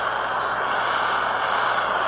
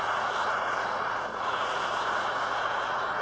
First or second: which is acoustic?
first